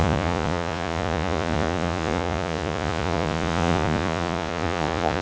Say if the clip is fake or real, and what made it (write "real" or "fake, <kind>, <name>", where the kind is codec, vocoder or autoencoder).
fake, vocoder, Vocos